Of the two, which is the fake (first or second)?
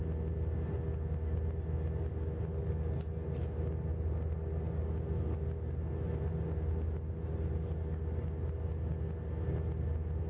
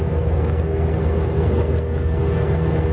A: second